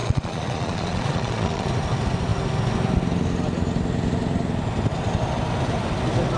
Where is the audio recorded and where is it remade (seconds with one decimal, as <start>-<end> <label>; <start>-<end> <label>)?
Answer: 0.0-1.7 remade; 1.7-6.4 recorded